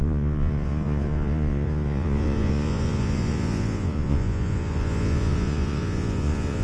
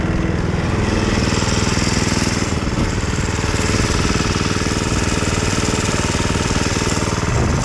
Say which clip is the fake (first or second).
first